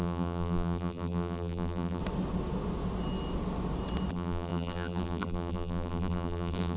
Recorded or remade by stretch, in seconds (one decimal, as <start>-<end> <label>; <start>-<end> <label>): 0.0-2.0 remade; 2.0-4.1 recorded; 4.1-6.8 remade